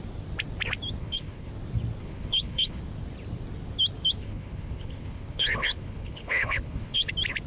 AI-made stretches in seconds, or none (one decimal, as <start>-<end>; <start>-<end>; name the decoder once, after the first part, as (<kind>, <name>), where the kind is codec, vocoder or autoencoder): 1.0-1.5 (codec, HILCodec); 2.0-2.8; 4.2-7.1